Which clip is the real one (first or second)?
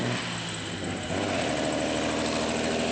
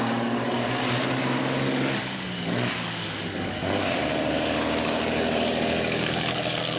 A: first